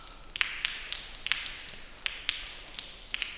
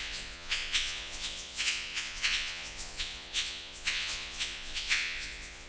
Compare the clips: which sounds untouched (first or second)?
first